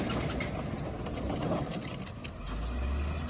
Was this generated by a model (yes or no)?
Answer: no